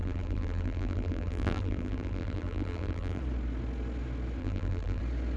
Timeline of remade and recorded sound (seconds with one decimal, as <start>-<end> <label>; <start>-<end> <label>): 0.0-3.2 remade; 3.2-4.4 recorded; 4.4-5.0 remade; 5.0-5.4 recorded